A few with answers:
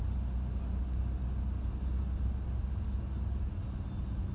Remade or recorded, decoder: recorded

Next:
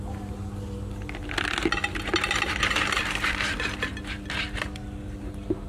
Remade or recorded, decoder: recorded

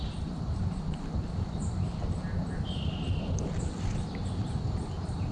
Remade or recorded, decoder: recorded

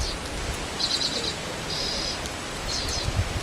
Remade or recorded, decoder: recorded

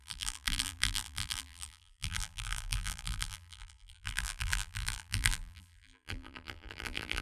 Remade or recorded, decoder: remade, vocoder, BigVGAN v2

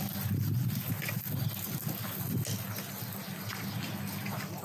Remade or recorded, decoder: recorded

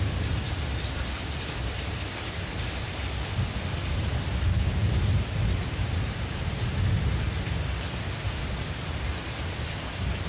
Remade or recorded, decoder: recorded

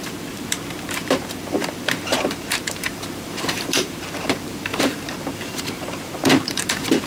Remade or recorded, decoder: remade, vocoder, BigVGAN v2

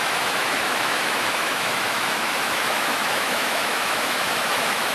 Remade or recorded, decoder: remade, autoencoder, DAC-VAE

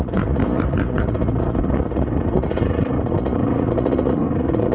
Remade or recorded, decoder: remade, vocoder, Vocos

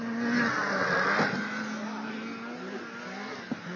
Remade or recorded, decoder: recorded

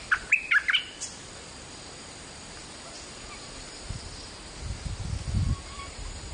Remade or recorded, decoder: recorded